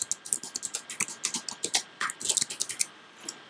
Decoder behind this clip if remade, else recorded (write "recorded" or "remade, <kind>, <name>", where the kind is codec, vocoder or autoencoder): recorded